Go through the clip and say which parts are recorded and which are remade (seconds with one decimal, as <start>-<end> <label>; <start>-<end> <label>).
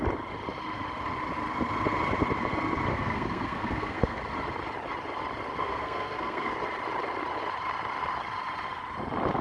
0.0-2.9 recorded; 2.9-4.2 remade; 4.2-5.6 recorded; 5.6-6.5 remade; 6.5-9.4 recorded